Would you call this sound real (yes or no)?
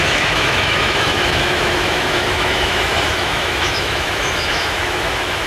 no